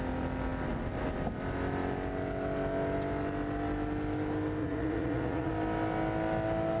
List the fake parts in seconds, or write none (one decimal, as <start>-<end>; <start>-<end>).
4.6-5.5